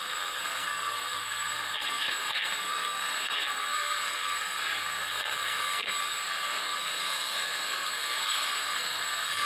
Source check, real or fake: fake